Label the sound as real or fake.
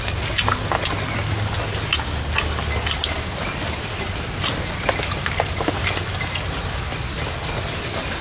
real